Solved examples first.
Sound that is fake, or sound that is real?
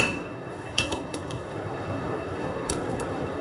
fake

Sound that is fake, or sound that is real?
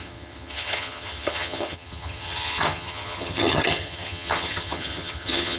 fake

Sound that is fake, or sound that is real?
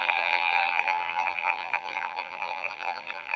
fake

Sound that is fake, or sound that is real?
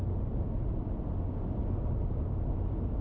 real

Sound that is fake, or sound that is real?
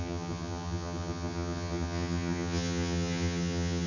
fake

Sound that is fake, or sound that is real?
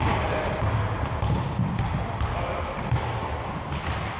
real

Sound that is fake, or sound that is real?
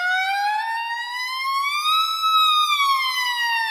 real